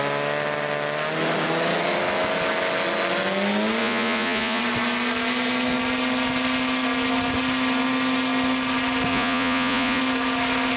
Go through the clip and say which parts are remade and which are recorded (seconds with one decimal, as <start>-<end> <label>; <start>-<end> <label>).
0.0-3.8 recorded; 3.8-4.6 remade; 4.6-9.1 recorded; 9.1-10.0 remade; 10.0-10.8 recorded